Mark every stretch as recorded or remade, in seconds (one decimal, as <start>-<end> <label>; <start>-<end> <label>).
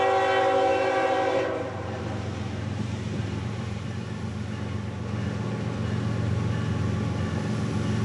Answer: 0.0-0.7 recorded; 0.7-4.3 remade; 4.3-8.0 recorded